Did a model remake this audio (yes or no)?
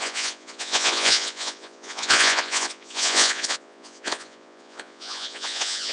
yes